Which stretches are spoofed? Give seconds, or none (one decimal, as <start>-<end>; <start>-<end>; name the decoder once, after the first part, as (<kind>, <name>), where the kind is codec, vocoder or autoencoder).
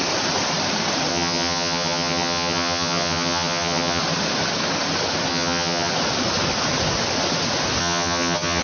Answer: 1.1-4.0 (vocoder, HiFi-GAN); 5.3-5.9; 7.8-8.6